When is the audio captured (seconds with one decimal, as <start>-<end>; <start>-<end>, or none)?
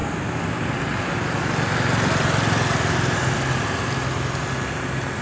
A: 0.0-5.2